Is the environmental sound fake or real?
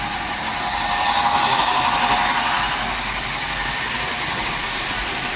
fake